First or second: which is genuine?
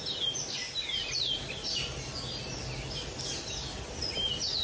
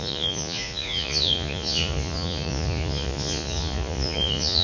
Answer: first